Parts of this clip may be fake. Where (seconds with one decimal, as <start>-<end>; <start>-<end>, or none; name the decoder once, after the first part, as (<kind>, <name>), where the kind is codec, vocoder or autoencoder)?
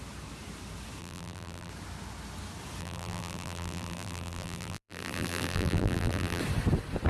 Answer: 1.0-1.7 (vocoder, BigVGAN v2); 2.8-6.4